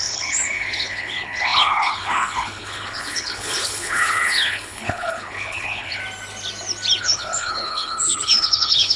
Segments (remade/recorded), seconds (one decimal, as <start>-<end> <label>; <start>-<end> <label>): 0.0-6.0 remade; 6.0-7.0 recorded; 7.0-9.0 remade

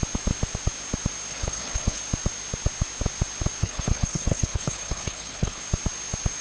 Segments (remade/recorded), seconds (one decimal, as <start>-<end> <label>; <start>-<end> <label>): 0.0-1.3 recorded; 1.3-2.0 remade; 2.0-3.6 recorded; 3.6-5.6 remade; 5.6-6.4 recorded

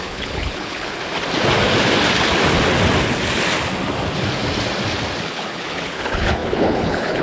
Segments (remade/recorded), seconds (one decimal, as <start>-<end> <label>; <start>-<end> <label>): 0.0-1.0 remade; 1.0-5.3 recorded; 5.3-7.2 remade

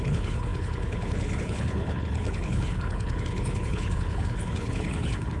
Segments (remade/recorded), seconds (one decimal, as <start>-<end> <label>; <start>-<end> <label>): 0.0-5.4 remade

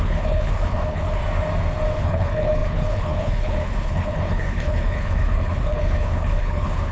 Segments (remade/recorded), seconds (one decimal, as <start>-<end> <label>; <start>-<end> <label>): 0.0-1.2 remade; 1.2-2.0 recorded; 2.0-6.9 remade

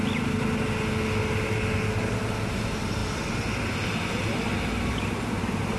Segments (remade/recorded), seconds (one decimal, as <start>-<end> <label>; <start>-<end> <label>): 0.0-5.8 recorded

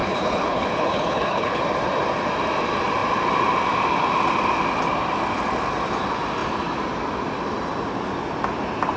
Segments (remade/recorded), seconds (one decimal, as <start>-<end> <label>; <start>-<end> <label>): 0.0-1.6 remade; 1.6-9.0 recorded